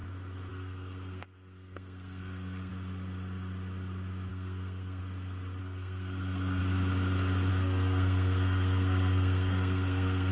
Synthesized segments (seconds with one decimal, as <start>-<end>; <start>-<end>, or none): 0.5-2.7; 4.3-5.0; 5.6-6.6; 7.5-10.3